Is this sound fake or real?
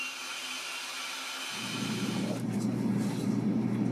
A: fake